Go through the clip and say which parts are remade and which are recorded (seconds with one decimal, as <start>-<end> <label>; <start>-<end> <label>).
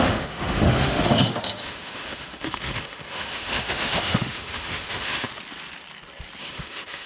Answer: 0.0-5.3 remade; 5.3-6.4 recorded; 6.4-7.1 remade